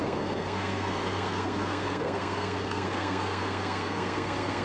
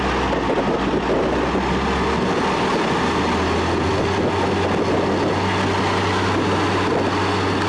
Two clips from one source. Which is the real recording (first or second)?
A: second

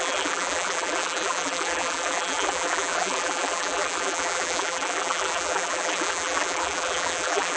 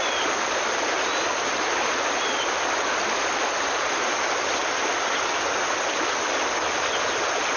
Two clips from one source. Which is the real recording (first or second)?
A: second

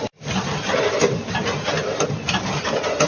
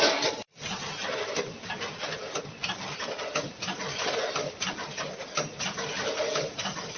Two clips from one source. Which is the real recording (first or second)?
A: first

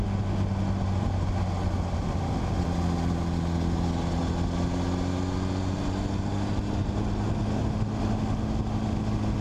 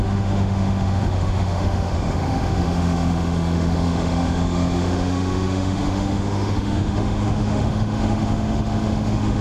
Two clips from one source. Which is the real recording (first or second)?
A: first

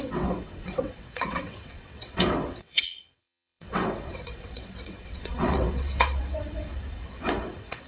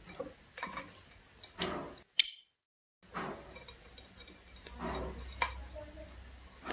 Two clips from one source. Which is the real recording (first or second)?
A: second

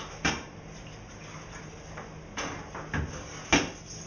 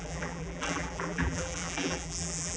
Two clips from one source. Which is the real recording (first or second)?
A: first